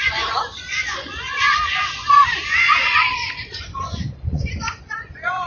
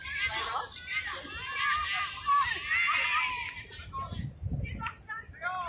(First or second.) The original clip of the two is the second